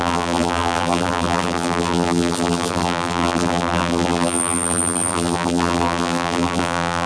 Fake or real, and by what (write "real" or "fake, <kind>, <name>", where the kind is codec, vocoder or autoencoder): fake, vocoder, BigVGAN v2